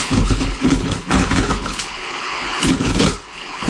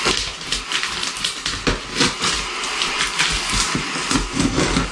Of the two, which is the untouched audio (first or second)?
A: second